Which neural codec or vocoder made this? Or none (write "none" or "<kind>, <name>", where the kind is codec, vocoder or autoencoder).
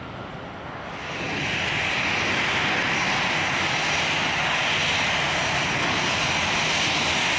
none